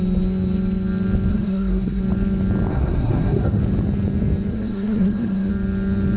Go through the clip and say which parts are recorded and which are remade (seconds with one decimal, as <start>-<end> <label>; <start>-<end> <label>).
0.0-1.3 recorded; 1.3-2.0 remade; 2.0-2.7 recorded; 2.7-3.6 remade; 3.6-4.5 recorded; 4.5-5.5 remade; 5.5-6.2 recorded